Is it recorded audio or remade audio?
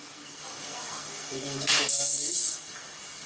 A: remade